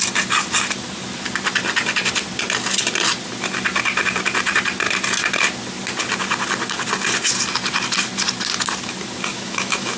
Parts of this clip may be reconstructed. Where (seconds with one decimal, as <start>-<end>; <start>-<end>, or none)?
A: 9.3-10.0